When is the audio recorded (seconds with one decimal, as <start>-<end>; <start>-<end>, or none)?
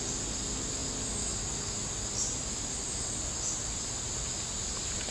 0.0-5.1